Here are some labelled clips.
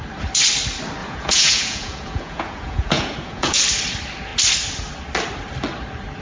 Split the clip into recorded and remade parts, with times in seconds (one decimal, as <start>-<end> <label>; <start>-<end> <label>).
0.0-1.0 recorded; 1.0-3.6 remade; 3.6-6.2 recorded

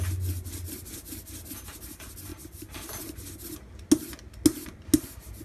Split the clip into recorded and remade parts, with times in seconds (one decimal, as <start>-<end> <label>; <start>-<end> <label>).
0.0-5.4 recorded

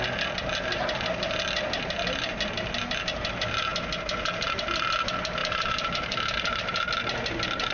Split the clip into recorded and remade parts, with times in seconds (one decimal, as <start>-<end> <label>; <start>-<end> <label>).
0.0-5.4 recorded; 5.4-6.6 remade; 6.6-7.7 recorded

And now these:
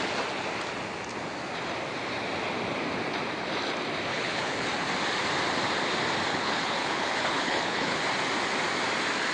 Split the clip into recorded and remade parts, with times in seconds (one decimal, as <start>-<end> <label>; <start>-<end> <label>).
0.0-4.1 recorded; 4.1-4.7 remade; 4.7-6.3 recorded; 6.3-8.0 remade; 8.0-9.3 recorded